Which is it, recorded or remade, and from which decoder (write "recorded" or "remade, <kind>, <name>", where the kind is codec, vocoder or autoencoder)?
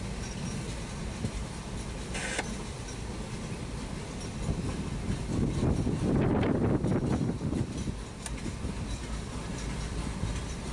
recorded